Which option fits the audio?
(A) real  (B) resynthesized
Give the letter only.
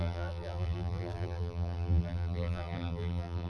B